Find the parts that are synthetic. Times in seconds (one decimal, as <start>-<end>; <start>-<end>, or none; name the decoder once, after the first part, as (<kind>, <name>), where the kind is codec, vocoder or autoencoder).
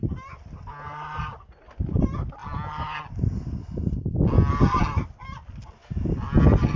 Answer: none